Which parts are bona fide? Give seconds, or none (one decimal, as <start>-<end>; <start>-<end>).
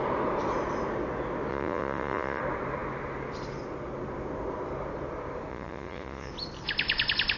0.0-1.5; 2.4-5.5; 6.3-7.4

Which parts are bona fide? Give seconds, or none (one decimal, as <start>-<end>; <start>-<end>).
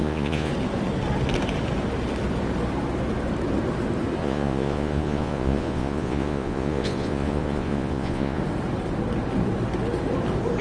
0.5-4.2; 8.4-10.6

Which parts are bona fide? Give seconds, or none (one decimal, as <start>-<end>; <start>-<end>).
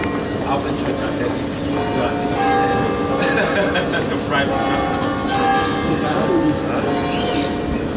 0.0-8.0